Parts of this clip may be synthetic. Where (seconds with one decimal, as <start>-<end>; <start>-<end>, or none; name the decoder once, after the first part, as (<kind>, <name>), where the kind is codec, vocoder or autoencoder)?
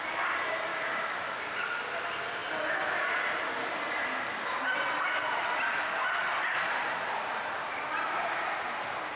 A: 0.7-1.4 (autoencoder, DAC-VAE)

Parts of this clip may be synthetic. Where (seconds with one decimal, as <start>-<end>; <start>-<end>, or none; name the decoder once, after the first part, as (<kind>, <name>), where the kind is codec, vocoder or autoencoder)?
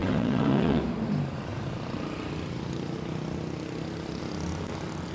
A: 0.0-0.8 (vocoder, WaveNeXt)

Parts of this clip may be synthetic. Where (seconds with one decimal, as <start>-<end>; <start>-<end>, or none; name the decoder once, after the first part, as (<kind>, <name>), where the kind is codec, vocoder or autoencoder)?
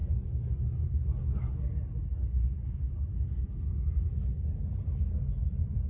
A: none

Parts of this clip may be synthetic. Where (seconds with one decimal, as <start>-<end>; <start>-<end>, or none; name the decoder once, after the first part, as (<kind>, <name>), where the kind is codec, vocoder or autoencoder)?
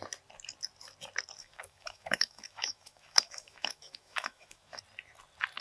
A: 1.4-4.8 (autoencoder, DAC-VAE)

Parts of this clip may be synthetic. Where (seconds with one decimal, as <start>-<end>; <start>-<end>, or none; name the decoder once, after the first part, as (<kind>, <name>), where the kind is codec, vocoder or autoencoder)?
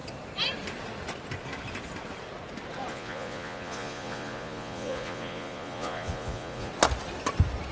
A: 2.9-6.7 (vocoder, Vocos)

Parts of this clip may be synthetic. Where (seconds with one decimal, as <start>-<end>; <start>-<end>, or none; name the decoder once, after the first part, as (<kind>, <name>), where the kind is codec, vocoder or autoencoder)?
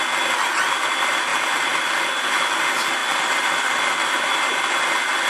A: 1.3-1.9 (vocoder, BigVGAN v2); 3.0-5.3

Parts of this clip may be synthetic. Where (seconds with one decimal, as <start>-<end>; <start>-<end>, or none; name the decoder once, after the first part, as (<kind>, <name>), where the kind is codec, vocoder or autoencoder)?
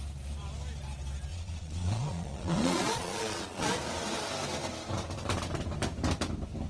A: 1.3-3.7 (vocoder, Vocos)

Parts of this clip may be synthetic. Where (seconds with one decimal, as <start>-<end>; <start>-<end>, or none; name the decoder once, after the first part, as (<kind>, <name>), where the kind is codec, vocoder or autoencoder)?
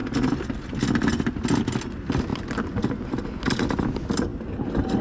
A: none